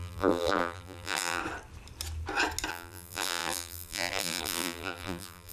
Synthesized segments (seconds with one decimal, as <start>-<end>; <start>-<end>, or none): 0.0-1.4; 2.7-5.5